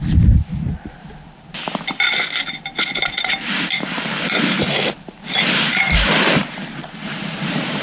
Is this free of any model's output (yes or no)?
no